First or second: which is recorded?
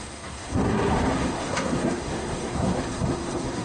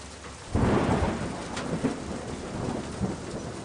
second